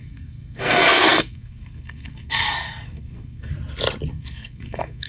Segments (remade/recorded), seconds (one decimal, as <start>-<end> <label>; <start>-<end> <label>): 0.0-3.5 remade; 3.5-4.1 recorded; 4.1-5.1 remade